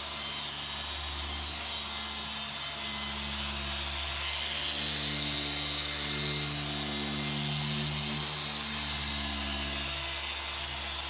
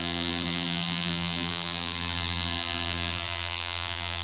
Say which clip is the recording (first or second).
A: first